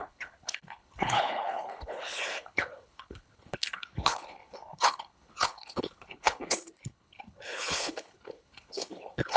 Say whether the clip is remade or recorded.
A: remade